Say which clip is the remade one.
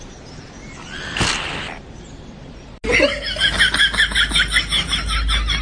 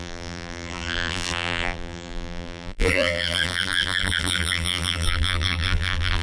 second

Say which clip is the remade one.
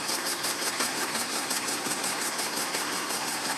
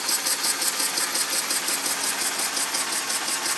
first